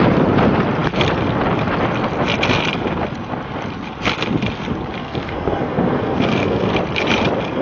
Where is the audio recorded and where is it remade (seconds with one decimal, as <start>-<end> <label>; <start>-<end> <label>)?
0.0-5.0 recorded; 5.0-6.7 remade; 6.7-7.6 recorded